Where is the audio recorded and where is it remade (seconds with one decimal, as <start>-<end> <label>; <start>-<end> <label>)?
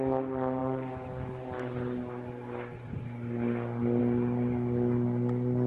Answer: 0.0-5.7 recorded